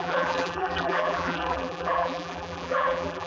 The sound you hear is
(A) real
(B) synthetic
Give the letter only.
B